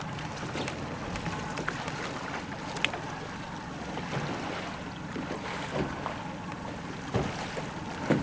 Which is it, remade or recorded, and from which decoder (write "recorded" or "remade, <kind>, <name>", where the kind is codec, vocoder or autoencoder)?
recorded